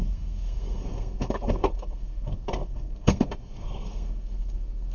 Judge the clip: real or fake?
fake